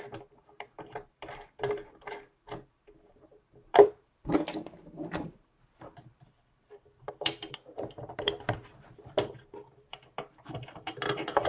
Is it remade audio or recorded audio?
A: remade